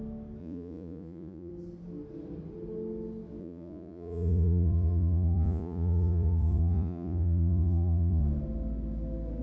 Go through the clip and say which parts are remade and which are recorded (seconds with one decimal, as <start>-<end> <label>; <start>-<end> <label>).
0.0-0.4 recorded; 0.4-1.5 remade; 1.5-3.4 recorded; 3.4-8.2 remade; 8.2-9.4 recorded